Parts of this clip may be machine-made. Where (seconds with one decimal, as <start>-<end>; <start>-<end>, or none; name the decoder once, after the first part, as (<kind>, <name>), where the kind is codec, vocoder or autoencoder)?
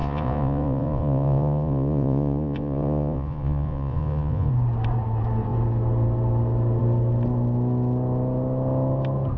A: 0.0-4.5 (vocoder, Vocos)